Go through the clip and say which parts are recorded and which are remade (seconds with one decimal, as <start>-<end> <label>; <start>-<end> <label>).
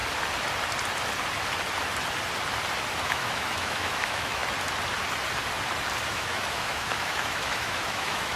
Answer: 0.0-3.0 recorded; 3.0-4.4 remade; 4.4-6.1 recorded; 6.1-8.4 remade